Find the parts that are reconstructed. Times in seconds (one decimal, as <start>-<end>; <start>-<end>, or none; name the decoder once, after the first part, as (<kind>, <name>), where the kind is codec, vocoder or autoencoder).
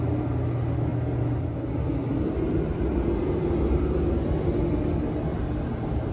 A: 5.3-6.1 (vocoder, BigVGAN v2)